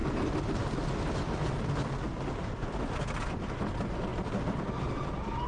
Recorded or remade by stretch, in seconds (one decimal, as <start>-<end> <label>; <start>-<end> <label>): 0.0-5.5 recorded